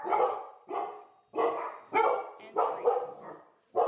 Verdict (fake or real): real